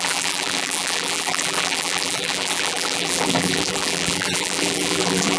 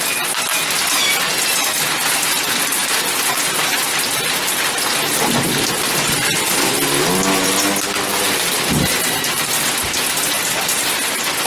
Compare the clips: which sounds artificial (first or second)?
first